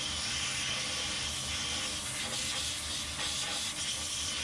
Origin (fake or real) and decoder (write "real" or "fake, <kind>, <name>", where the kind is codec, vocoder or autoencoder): real